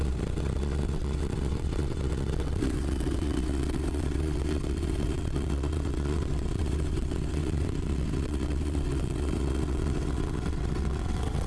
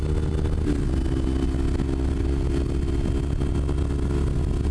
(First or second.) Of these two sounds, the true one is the second